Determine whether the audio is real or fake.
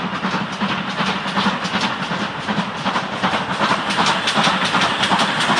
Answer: real